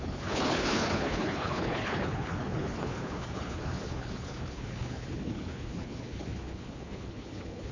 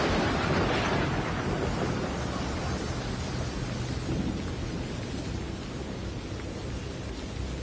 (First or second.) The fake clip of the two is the first